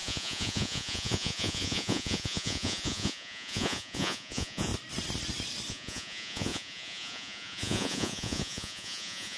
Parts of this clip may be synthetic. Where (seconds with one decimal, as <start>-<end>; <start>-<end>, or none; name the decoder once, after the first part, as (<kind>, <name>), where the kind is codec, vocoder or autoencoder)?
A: 0.0-4.7 (vocoder, Vocos); 5.7-9.4